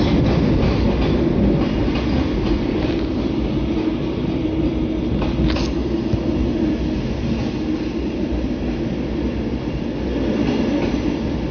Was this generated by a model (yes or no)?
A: no